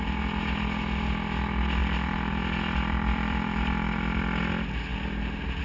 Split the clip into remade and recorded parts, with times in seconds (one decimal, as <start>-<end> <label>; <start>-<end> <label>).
0.0-1.8 recorded; 1.8-4.4 remade; 4.4-5.6 recorded